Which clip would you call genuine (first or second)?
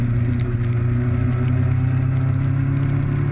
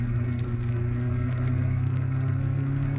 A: first